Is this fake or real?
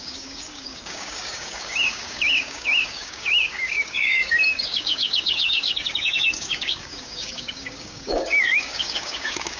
fake